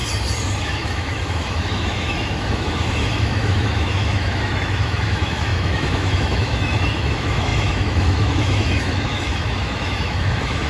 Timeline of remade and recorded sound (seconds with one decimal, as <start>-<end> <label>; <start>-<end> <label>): 0.0-0.6 recorded; 0.6-10.7 remade

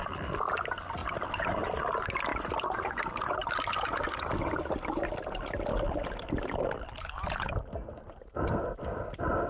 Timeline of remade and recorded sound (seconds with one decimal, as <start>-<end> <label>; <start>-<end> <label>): 0.0-0.6 remade; 0.6-1.0 recorded; 1.0-1.8 remade; 1.8-2.3 recorded; 2.3-3.0 remade; 3.0-5.7 recorded; 5.7-8.2 remade; 8.2-9.5 recorded

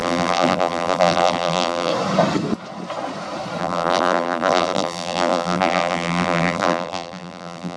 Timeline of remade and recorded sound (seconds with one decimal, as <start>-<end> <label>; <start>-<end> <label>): 0.0-1.9 remade; 1.9-3.6 recorded; 3.6-7.8 remade

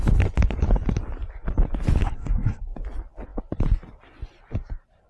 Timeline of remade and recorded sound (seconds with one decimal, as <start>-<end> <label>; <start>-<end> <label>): 0.0-2.0 recorded; 2.0-2.6 remade; 2.6-5.1 recorded

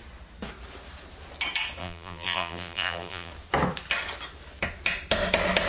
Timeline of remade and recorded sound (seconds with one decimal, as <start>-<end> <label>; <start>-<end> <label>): 0.0-1.8 recorded; 1.8-3.3 remade; 3.3-5.7 recorded